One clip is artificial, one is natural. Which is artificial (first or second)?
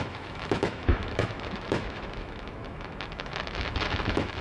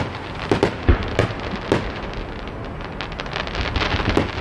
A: first